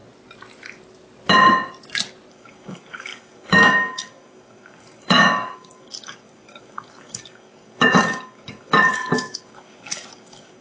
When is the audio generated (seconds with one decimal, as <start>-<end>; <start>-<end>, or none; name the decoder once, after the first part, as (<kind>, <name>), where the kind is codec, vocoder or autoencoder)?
2.3-10.6 (codec, DAC)